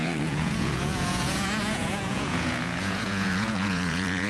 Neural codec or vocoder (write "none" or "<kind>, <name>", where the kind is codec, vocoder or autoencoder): vocoder, Vocos